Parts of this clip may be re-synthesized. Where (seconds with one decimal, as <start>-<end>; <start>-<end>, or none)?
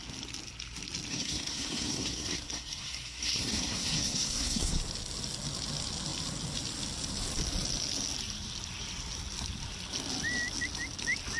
1.1-4.8